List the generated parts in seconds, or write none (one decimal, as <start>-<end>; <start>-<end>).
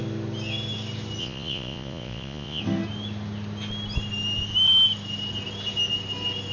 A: 1.2-2.6